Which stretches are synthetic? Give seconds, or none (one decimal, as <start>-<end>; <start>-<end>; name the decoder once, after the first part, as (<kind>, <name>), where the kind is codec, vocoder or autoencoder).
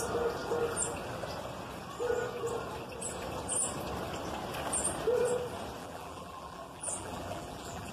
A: 5.8-7.9 (vocoder, BigVGAN v2)